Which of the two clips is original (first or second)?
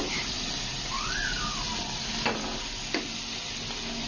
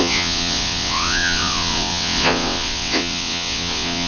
first